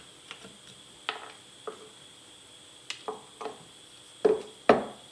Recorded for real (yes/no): yes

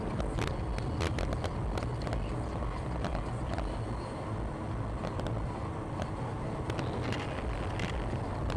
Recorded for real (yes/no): yes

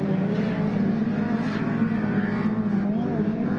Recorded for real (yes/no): no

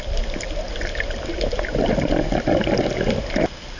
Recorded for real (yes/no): yes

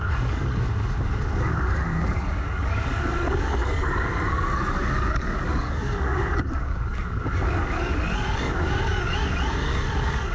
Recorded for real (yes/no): no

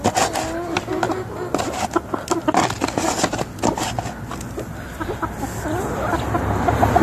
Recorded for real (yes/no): yes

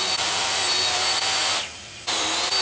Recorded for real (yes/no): no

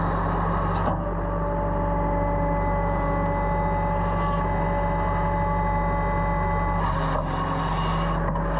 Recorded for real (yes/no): yes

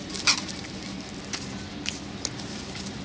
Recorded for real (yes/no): yes